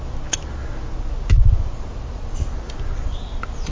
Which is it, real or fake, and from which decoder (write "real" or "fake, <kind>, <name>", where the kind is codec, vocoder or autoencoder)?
real